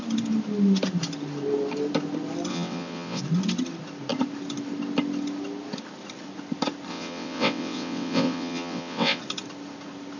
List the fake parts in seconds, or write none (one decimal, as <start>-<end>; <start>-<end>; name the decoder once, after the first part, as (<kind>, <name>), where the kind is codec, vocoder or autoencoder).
2.5-3.2 (vocoder, WaveNeXt); 6.9-9.2